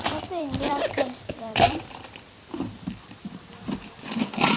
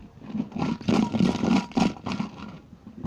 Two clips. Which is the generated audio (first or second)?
first